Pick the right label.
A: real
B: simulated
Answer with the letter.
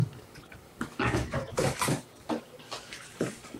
B